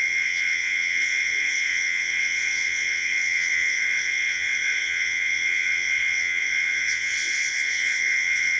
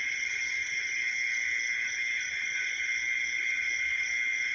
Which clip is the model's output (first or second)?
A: first